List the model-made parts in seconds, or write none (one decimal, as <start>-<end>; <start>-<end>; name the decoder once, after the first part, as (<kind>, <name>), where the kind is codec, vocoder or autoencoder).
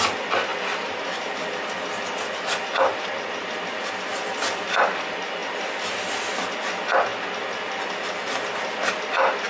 none